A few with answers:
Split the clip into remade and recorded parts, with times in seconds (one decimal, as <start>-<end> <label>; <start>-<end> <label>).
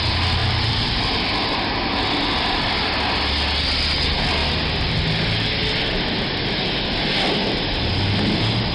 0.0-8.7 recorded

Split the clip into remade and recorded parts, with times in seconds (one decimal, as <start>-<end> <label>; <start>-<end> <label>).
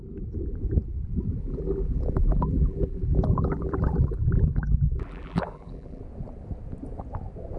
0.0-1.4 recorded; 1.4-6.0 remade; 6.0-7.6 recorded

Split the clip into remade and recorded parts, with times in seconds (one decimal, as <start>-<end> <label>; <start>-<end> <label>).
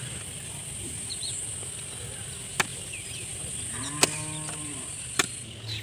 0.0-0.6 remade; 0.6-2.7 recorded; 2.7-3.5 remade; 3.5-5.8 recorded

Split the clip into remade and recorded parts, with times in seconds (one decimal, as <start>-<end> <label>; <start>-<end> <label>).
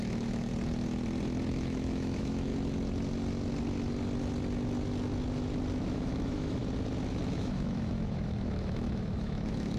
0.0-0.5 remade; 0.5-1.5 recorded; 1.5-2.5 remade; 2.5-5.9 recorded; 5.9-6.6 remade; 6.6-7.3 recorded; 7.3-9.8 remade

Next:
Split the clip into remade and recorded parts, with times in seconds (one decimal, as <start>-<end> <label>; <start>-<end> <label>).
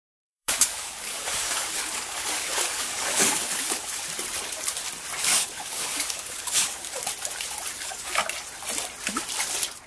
0.0-3.9 remade; 3.9-5.2 recorded; 5.2-7.0 remade; 7.0-7.7 recorded; 7.7-8.2 remade; 8.2-9.9 recorded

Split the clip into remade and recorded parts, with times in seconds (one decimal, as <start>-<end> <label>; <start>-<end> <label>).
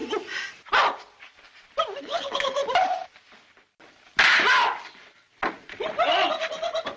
0.0-2.0 recorded; 2.0-2.6 remade; 2.6-7.0 recorded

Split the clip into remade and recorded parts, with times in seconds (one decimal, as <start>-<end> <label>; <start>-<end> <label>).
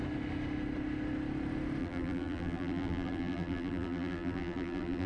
0.0-1.8 recorded; 1.8-5.1 remade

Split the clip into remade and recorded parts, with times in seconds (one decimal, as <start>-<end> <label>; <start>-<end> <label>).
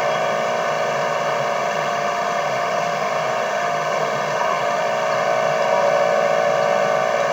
0.0-1.6 recorded; 1.6-3.1 remade; 3.1-3.5 recorded; 3.5-4.8 remade; 4.8-7.3 recorded